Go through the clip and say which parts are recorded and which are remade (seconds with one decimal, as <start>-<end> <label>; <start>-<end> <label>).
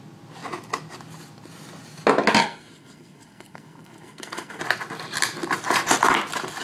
0.0-2.4 recorded; 2.4-4.6 remade; 4.6-6.6 recorded